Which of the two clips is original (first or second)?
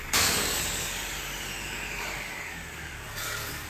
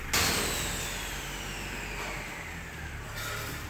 second